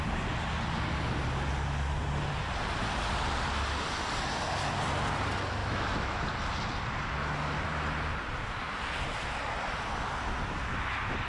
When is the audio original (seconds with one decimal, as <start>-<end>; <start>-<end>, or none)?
0.0-5.6; 6.2-11.3